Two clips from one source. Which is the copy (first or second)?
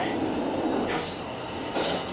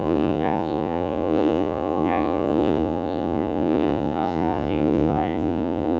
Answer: second